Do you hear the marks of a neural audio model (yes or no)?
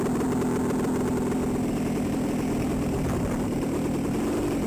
no